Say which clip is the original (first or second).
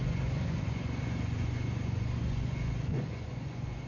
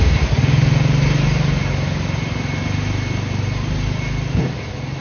second